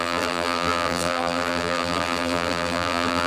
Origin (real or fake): fake